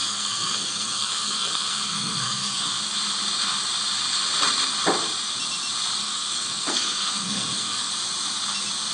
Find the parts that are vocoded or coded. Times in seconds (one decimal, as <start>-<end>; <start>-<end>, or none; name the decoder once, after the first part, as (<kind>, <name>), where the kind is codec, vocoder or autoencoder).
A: 0.0-2.7 (codec, SNAC); 6.0-7.9